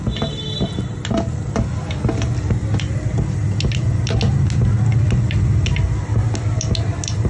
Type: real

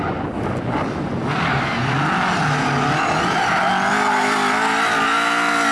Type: real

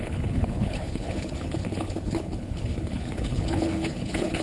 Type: fake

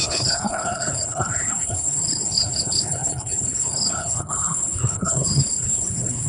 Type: fake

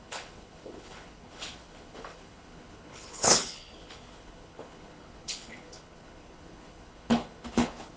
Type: fake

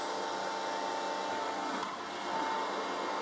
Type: real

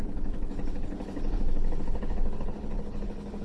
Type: fake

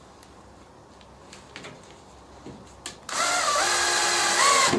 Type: real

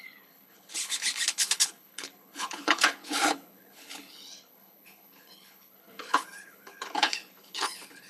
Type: fake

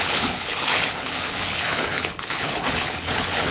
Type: fake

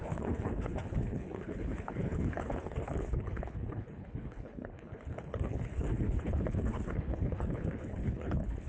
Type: fake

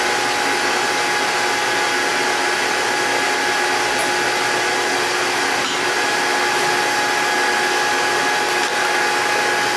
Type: real